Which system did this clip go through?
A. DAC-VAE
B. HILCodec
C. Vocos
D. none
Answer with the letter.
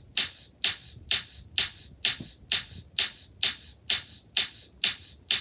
D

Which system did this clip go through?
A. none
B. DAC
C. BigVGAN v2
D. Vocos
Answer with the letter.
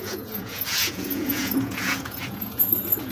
D